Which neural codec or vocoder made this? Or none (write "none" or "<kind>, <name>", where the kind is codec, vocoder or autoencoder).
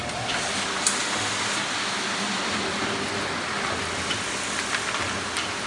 none